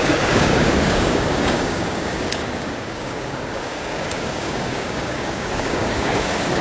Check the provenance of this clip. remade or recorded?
remade